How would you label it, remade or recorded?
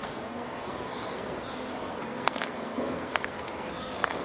remade